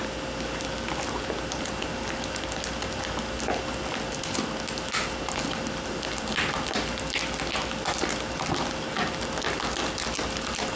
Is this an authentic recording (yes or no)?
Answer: yes